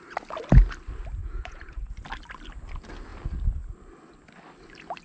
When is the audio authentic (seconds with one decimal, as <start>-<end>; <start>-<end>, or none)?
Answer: 0.0-1.2; 1.9-5.0